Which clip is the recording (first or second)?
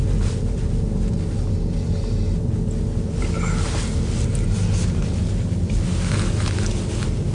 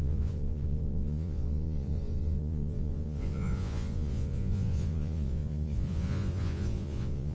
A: first